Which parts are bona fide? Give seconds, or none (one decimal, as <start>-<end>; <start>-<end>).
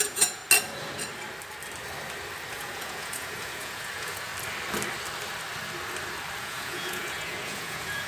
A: 0.4-2.5; 4.3-6.4